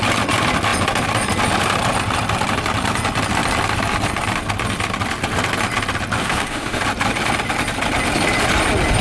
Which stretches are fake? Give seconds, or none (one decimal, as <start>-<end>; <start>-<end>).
6.2-6.8